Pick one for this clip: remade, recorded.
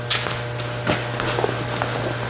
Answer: recorded